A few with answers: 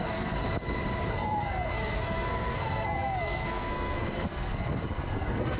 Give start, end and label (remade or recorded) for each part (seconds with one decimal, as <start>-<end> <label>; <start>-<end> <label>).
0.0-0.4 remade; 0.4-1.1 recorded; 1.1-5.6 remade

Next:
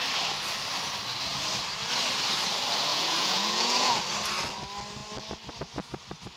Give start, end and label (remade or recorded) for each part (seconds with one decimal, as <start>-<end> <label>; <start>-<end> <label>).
0.0-2.9 recorded; 2.9-4.0 remade; 4.0-6.4 recorded

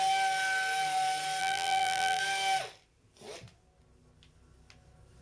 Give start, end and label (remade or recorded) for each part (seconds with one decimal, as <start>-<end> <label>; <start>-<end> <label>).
0.0-1.4 recorded; 1.4-2.2 remade; 2.2-5.2 recorded